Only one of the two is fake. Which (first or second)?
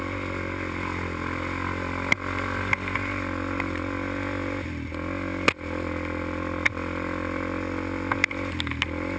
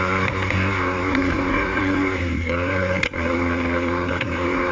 second